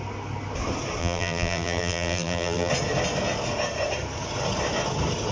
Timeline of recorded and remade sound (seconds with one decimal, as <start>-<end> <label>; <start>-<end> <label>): 0.0-1.0 recorded; 1.0-2.7 remade; 2.7-5.3 recorded